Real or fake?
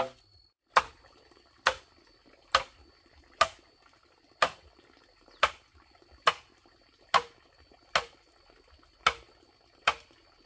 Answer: real